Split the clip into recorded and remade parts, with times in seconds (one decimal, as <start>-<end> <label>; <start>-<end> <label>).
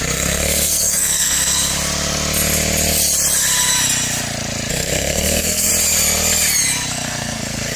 0.0-1.7 remade; 1.7-4.7 recorded; 4.7-5.7 remade; 5.7-6.9 recorded; 6.9-7.8 remade